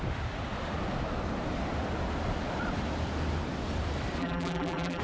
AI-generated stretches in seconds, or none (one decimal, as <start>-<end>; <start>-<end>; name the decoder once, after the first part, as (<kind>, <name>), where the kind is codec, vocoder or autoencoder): 4.2-5.0 (vocoder, BigVGAN v2)